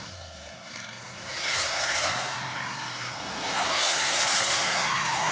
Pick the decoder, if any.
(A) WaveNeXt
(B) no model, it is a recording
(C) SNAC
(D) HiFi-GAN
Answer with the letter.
C